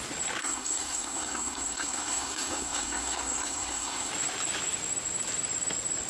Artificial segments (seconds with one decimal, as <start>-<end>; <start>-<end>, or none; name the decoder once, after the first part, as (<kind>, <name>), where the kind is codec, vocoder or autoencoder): 0.4-4.1 (codec, SNAC)